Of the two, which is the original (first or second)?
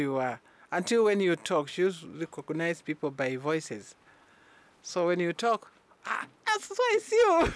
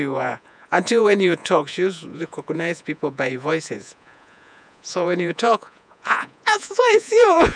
first